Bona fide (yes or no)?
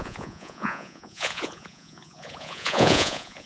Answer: no